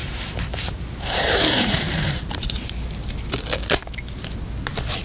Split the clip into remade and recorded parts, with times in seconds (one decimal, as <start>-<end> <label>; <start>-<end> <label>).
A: 0.0-3.0 remade; 3.0-5.0 recorded